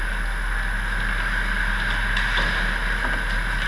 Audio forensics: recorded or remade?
recorded